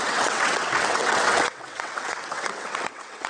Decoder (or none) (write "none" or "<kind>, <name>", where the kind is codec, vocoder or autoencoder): vocoder, WaveNeXt